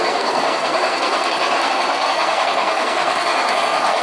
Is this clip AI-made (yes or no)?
yes